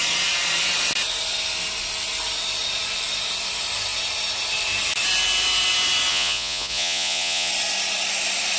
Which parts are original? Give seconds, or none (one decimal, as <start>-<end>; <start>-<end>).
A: 0.0-6.1; 7.5-8.6